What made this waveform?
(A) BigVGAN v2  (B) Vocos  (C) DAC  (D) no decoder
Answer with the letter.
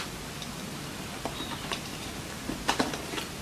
D